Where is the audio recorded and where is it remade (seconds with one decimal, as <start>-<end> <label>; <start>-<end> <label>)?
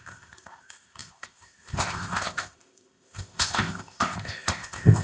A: 0.0-5.0 remade